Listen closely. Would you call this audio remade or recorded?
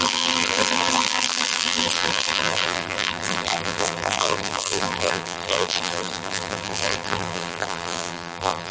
remade